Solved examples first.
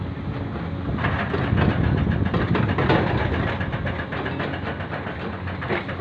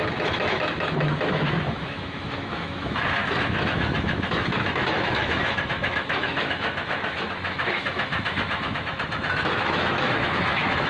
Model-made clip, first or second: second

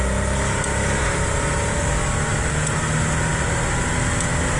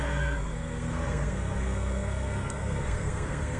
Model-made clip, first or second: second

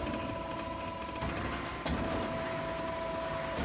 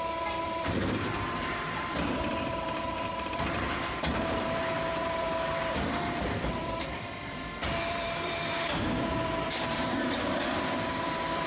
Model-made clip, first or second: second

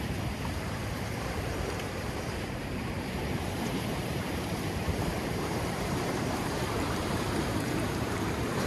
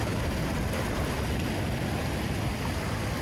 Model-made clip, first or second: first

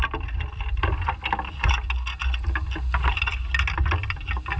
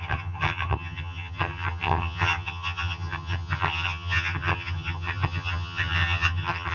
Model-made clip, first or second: second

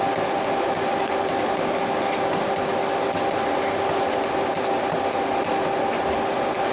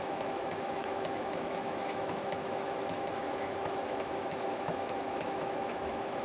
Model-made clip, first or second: second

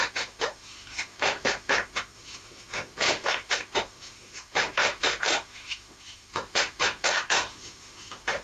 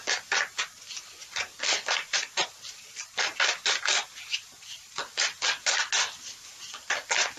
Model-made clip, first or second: first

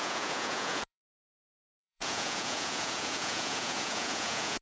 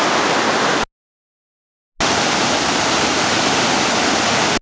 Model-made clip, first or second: first